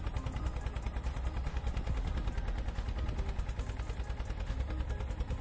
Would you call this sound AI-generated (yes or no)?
no